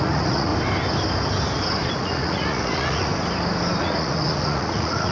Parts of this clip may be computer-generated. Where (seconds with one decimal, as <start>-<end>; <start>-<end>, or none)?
0.0-0.5; 1.9-3.1; 3.8-5.1